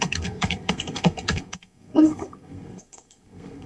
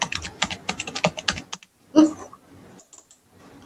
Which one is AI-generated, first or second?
first